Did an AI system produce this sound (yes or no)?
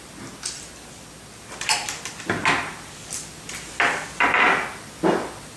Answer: no